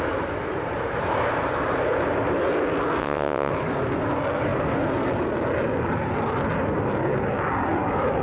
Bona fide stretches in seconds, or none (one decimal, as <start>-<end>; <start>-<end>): 0.0-3.0; 3.5-8.2